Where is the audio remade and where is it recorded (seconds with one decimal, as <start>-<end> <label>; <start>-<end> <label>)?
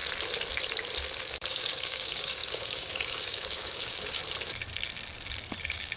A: 0.0-1.5 recorded; 1.5-4.2 remade; 4.2-5.6 recorded; 5.6-6.0 remade